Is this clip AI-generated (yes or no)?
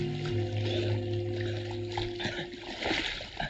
no